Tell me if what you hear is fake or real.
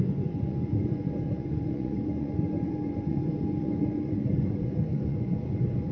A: fake